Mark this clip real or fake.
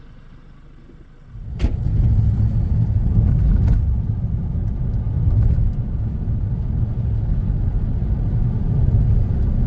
real